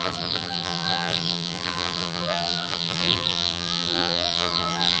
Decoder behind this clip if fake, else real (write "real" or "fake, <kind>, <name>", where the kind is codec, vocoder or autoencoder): fake, vocoder, BigVGAN v2